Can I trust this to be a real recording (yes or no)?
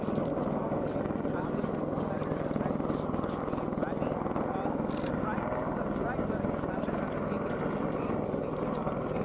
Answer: yes